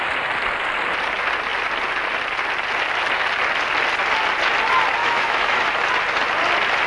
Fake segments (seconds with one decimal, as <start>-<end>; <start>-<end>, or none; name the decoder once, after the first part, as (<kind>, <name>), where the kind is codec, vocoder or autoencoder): 5.0-5.6 (autoencoder, DAC-VAE)